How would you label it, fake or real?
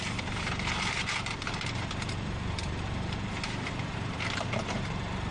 fake